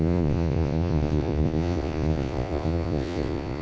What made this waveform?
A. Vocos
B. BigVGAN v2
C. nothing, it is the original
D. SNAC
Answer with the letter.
A